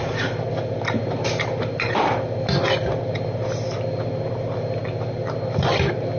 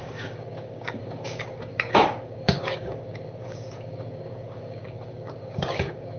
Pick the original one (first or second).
first